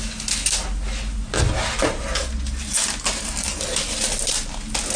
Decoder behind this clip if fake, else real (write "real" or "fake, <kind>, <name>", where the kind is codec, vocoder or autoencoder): real